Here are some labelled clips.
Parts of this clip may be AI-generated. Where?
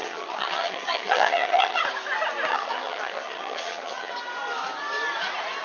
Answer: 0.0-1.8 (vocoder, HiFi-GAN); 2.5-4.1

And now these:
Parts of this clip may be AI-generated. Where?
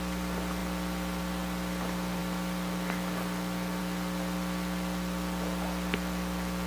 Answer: none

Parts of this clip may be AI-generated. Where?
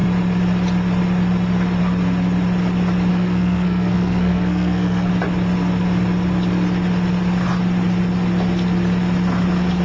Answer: 3.1-5.1 (codec, SNAC)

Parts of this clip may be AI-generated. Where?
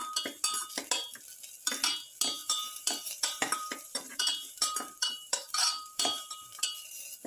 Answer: 2.4-6.6 (vocoder, BigVGAN v2)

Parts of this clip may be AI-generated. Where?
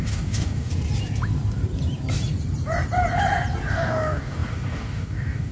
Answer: 0.0-0.7 (codec, DAC); 3.7-5.5